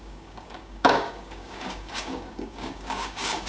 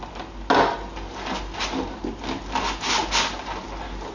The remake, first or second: first